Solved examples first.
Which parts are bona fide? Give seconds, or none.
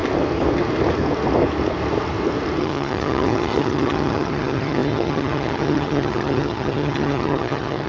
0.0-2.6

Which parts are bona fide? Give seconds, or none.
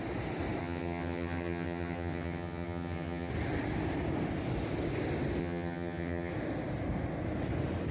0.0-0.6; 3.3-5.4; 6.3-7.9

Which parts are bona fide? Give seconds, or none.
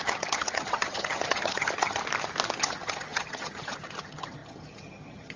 2.0-2.6